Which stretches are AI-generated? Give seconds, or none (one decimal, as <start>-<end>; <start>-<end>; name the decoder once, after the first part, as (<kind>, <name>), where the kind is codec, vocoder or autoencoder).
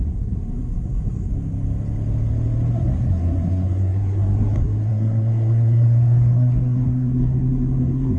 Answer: 0.0-1.3 (codec, SNAC); 2.7-8.2